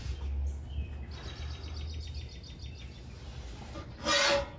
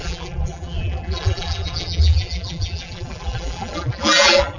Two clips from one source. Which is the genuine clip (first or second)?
first